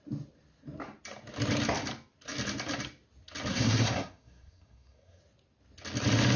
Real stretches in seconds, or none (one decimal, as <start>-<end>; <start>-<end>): 0.0-3.5; 5.2-6.4